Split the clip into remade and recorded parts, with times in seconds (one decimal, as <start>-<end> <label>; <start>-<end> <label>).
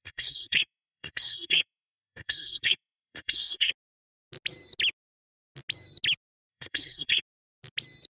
0.0-3.7 remade; 3.7-6.5 recorded; 6.5-7.2 remade; 7.2-8.1 recorded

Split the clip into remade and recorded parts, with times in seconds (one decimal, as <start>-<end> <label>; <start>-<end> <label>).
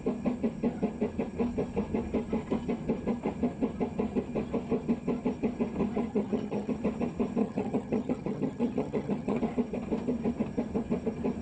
0.0-6.1 recorded; 6.1-6.7 remade; 6.7-7.4 recorded; 7.4-9.4 remade; 9.4-11.4 recorded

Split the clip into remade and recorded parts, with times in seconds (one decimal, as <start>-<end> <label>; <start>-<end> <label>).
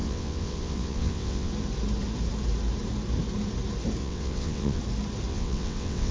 0.0-1.5 remade; 1.5-4.0 recorded; 4.0-4.8 remade; 4.8-5.3 recorded; 5.3-6.1 remade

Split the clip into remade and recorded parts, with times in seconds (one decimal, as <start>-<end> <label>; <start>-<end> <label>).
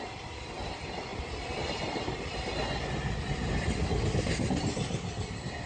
0.0-5.7 recorded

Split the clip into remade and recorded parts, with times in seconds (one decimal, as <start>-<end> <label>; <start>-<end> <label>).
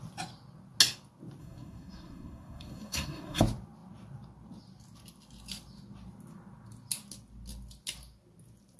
0.0-1.4 recorded; 1.4-3.4 remade; 3.4-8.8 recorded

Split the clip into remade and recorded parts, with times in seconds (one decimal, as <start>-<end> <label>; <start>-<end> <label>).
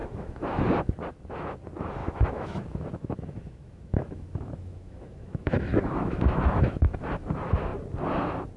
0.0-0.6 remade; 0.6-2.0 recorded; 2.0-7.0 remade; 7.0-8.6 recorded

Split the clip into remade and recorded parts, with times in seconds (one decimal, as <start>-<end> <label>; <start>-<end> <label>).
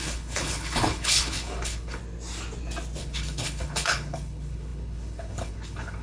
0.0-2.0 remade; 2.0-3.0 recorded; 3.0-6.0 remade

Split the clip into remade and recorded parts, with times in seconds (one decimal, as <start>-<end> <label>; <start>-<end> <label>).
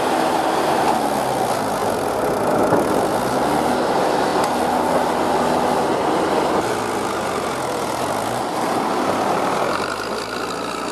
0.0-10.9 recorded